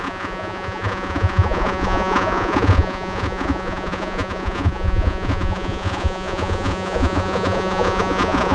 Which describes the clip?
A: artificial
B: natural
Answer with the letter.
A